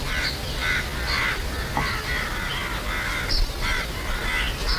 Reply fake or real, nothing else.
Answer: real